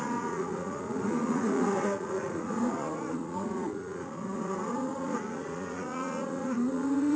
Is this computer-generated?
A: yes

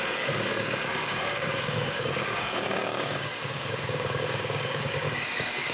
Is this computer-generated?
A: yes